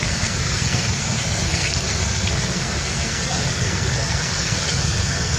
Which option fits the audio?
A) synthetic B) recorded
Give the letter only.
A